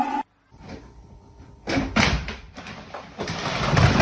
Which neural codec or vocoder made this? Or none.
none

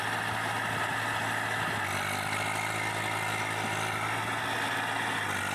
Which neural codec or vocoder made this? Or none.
none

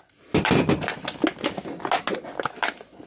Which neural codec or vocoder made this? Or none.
none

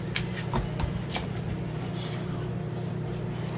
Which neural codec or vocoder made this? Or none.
none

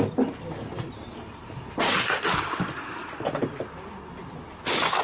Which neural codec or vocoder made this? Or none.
vocoder, BigVGAN v2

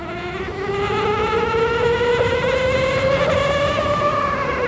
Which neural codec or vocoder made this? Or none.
none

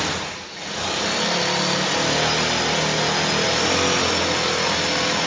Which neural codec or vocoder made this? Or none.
none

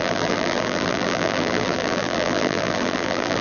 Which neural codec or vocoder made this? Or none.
vocoder, BigVGAN v2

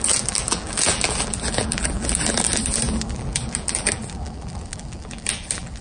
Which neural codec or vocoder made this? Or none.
vocoder, BigVGAN v2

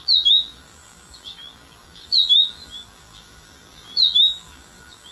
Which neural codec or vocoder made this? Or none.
vocoder, BigVGAN v2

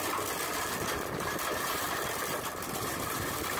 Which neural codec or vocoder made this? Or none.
vocoder, BigVGAN v2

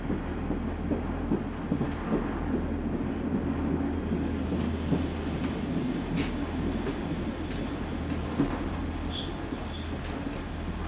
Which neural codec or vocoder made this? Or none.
none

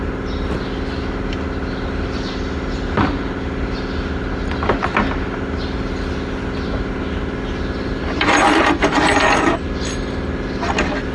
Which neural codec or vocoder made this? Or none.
none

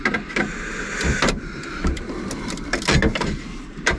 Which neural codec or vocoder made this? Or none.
none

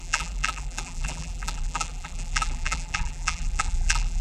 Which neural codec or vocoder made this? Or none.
vocoder, BigVGAN v2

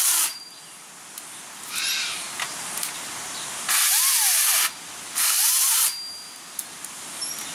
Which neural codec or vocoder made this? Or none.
none